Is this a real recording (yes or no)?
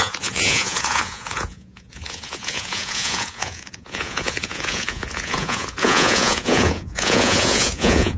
no